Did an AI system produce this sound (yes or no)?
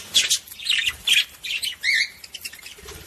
no